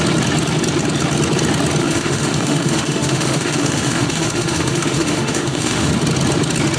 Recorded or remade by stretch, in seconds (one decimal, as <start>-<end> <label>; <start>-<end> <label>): 0.0-1.8 recorded; 1.8-5.9 remade; 5.9-6.8 recorded